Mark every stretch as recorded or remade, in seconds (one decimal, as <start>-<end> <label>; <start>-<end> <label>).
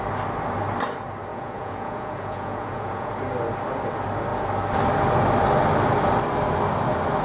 0.0-1.3 recorded; 1.3-3.1 remade; 3.1-7.2 recorded